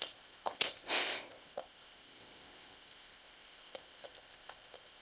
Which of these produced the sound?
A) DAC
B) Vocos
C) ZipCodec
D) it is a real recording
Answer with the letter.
C